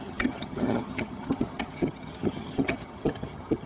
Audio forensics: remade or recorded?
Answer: remade